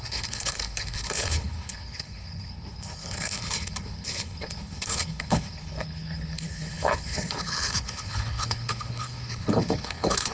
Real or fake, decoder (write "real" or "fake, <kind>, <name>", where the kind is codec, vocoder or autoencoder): fake, codec, HILCodec